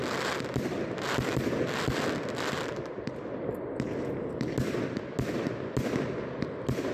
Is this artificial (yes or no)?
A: no